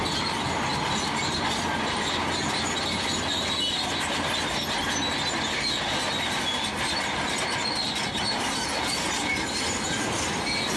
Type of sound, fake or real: real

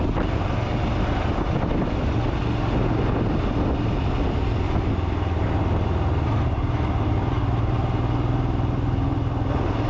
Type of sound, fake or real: real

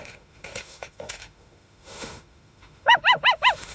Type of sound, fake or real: fake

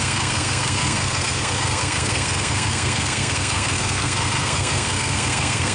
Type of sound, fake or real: fake